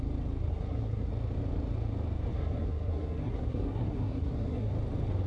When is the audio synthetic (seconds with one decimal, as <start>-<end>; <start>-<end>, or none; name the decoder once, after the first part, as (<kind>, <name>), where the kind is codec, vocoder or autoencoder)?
0.5-1.1 (codec, SNAC); 2.3-4.7